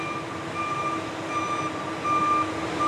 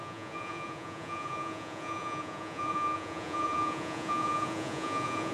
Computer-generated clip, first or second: second